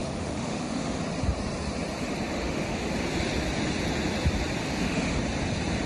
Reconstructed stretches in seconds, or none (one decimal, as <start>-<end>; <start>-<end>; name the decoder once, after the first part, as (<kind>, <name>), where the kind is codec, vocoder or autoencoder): 0.0-1.0 (autoencoder, DAC-VAE); 2.3-2.9; 4.6-5.2